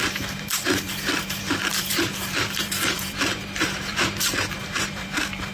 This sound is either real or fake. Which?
fake